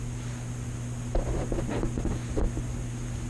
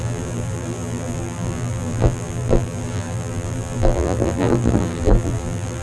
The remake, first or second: second